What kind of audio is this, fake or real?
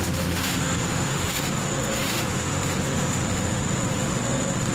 fake